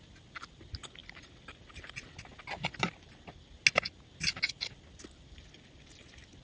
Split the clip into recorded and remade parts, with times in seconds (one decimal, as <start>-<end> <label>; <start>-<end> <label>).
0.0-6.4 recorded